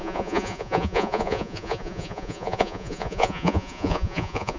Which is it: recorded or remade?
remade